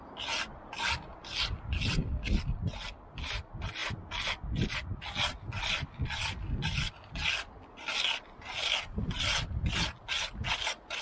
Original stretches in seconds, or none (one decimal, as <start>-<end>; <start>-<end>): 0.0-11.0